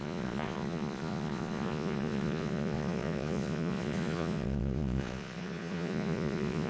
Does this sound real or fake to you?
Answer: fake